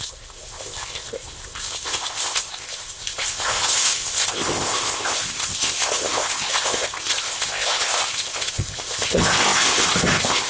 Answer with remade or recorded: remade